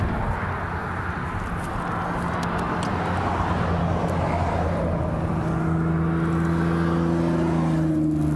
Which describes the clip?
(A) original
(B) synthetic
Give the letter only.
A